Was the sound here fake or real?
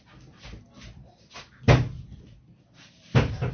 real